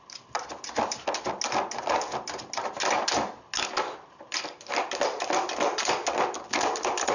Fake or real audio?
real